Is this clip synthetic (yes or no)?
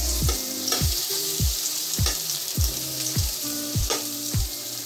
yes